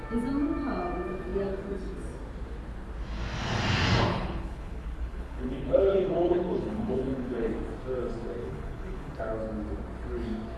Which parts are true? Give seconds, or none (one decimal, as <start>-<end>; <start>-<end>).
0.0-4.1; 7.5-8.4; 9.2-10.6